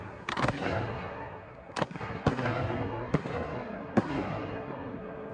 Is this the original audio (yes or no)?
no